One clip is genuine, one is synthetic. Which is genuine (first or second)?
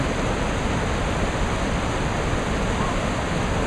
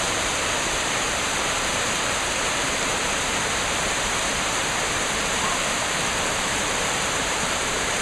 first